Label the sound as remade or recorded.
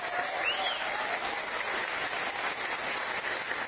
recorded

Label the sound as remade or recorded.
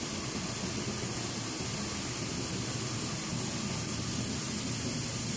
recorded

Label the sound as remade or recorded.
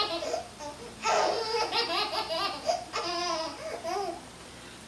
remade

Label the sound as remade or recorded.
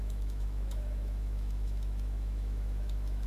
remade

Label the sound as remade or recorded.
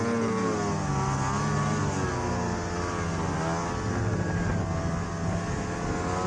recorded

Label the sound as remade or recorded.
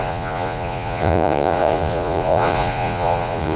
remade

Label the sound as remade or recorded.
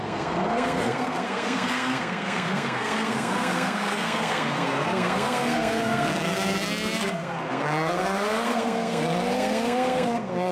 remade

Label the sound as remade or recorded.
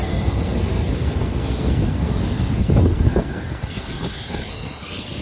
remade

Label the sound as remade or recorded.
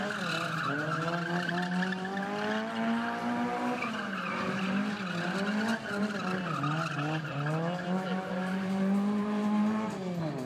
recorded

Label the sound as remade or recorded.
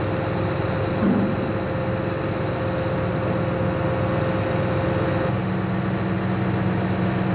recorded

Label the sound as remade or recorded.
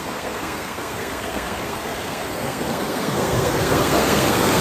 remade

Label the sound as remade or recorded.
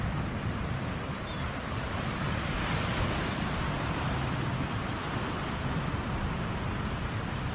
recorded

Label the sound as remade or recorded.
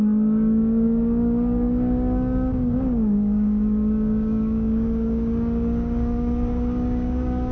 remade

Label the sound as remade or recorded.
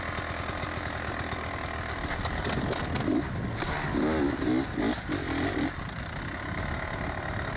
recorded